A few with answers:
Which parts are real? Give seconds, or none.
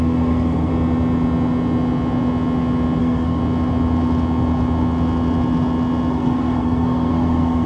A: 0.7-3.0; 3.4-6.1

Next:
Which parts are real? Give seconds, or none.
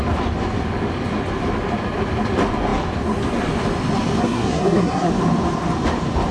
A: 0.0-4.2; 5.1-6.3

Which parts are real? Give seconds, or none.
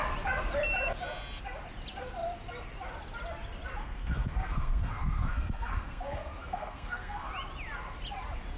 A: 0.0-3.8; 7.3-8.6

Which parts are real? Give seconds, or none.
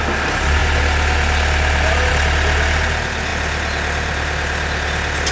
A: 0.0-5.3